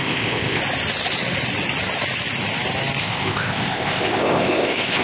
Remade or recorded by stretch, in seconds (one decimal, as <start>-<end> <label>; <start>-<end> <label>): 0.0-0.6 remade; 0.6-3.0 recorded; 3.0-5.0 remade